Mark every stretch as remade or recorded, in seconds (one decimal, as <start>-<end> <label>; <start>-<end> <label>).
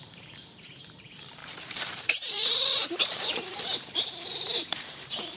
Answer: 0.0-5.4 remade